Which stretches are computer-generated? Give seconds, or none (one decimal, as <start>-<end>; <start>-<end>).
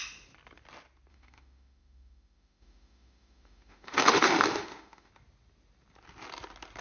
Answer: 1.1-5.1